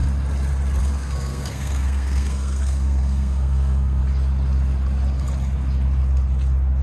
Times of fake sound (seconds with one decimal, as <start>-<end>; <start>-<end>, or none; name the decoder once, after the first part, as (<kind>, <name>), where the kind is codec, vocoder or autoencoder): 0.8-4.0 (codec, SNAC)